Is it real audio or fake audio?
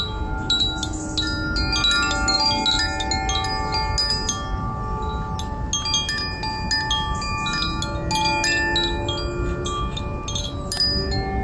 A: real